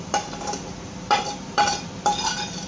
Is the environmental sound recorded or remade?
remade